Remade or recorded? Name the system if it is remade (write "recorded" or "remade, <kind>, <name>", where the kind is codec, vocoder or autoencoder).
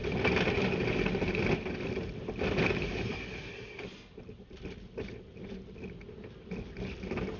recorded